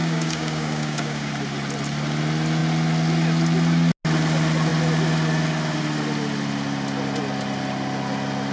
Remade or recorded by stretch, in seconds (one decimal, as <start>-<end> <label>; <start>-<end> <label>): 0.0-1.3 remade; 1.3-8.5 recorded